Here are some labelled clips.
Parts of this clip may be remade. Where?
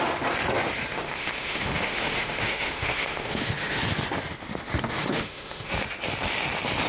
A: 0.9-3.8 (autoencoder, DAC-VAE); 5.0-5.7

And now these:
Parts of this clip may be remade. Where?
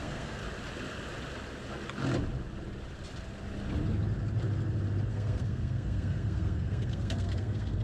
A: 0.0-0.4 (codec, SNAC); 5.1-7.8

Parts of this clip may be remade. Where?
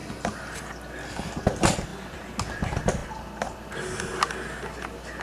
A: 0.0-0.6 (vocoder, BigVGAN v2)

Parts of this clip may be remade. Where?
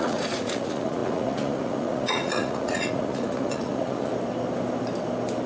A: 0.0-4.1 (vocoder, Vocos)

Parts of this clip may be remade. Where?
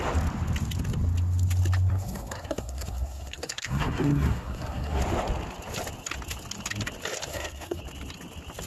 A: 1.9-5.0 (codec, SNAC); 7.3-7.8